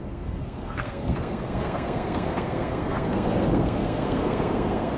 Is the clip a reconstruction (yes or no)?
yes